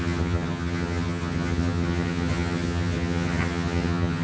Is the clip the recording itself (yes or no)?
no